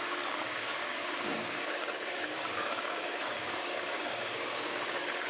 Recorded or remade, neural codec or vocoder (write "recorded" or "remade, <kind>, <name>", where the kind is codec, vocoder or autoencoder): remade, codec, DAC